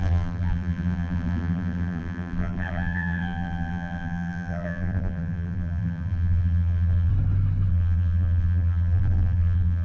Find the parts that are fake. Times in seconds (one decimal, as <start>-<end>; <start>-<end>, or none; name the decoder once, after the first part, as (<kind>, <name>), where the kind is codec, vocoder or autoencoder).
0.0-7.1 (vocoder, BigVGAN v2); 7.7-9.8

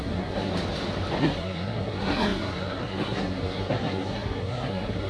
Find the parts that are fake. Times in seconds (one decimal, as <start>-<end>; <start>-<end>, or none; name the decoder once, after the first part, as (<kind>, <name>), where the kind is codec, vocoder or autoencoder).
0.0-0.5 (codec, SNAC); 1.2-5.1